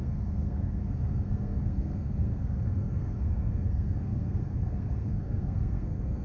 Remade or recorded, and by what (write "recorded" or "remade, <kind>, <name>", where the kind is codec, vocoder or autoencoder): remade, codec, SNAC